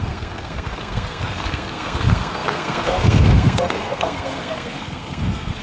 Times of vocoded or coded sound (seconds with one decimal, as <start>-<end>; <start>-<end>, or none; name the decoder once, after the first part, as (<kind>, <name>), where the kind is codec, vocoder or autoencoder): 0.0-5.6 (codec, SNAC)